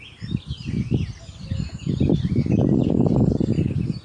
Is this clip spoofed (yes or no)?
no